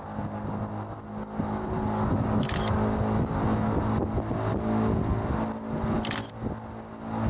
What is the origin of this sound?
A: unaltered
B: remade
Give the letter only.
A